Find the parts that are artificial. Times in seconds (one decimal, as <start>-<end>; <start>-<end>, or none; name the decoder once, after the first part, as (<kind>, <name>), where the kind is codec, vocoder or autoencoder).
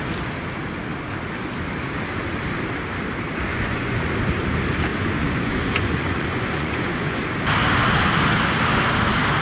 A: 3.5-4.1 (vocoder, Vocos); 4.9-7.2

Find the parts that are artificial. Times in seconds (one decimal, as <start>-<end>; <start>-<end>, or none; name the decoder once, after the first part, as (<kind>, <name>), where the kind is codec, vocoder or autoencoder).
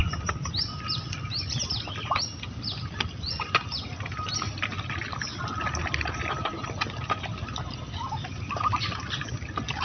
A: none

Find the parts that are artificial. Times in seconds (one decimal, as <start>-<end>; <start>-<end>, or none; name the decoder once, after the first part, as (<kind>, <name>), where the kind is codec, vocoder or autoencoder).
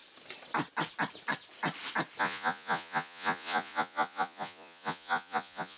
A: 2.2-5.8 (vocoder, Vocos)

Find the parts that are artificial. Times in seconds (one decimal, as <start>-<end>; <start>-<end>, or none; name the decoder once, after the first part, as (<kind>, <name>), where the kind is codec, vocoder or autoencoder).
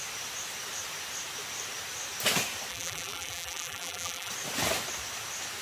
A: 2.7-4.3 (vocoder, BigVGAN v2)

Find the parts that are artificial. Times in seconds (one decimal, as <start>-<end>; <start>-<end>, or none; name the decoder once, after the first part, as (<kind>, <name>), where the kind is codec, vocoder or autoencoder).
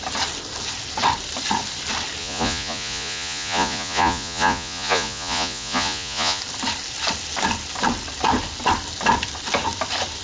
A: 2.2-6.4 (vocoder, Vocos)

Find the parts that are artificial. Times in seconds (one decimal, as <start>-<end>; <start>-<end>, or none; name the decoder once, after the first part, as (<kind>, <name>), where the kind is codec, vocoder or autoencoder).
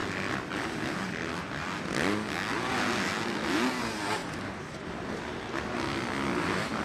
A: 4.2-5.2 (vocoder, BigVGAN v2)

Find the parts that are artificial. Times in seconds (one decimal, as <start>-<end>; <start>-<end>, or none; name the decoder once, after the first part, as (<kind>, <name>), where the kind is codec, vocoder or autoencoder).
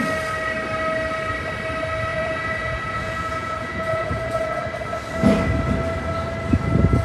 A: 2.1-4.6 (vocoder, Vocos)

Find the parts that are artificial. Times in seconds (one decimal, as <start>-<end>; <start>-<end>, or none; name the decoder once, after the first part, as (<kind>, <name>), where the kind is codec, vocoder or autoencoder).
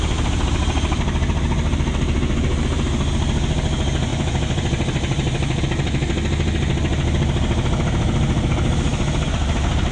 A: none